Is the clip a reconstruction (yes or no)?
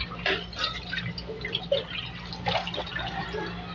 no